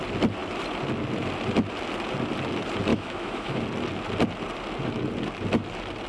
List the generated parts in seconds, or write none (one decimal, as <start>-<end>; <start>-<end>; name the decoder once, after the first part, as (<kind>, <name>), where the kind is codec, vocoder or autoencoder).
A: 2.9-3.6 (autoencoder, DAC-VAE)